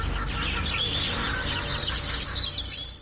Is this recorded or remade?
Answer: recorded